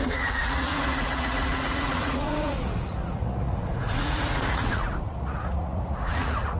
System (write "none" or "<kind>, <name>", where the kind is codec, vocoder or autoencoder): vocoder, Vocos